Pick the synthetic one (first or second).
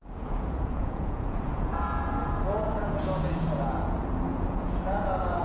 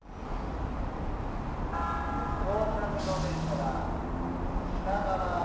first